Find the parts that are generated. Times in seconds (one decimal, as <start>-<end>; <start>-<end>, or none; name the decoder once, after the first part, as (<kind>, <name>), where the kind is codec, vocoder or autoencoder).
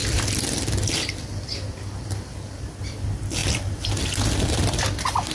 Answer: none